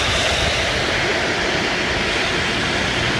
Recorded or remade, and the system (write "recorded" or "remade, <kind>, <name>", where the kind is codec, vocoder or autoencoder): recorded